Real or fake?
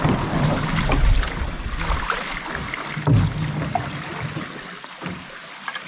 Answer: real